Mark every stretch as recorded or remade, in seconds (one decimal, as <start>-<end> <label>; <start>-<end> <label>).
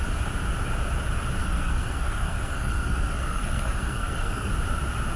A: 0.0-1.4 recorded; 1.4-4.5 remade; 4.5-5.2 recorded